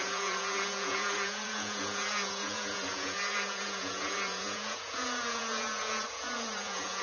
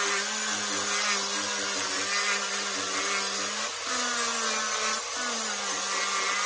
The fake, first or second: first